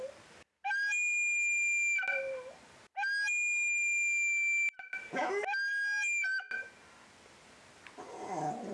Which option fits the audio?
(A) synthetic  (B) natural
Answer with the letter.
B